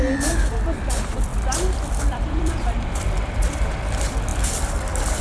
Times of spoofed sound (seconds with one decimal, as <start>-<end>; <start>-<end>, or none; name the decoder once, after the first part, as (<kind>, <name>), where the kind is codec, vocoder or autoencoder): 0.0-5.2 (vocoder, BigVGAN v2)